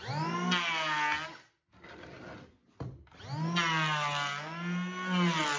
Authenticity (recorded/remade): recorded